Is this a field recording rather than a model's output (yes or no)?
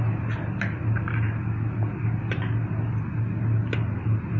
yes